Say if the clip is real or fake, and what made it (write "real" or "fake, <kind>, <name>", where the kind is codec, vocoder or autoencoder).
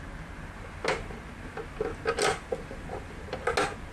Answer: real